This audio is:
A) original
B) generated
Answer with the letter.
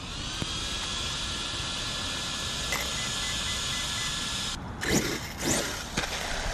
A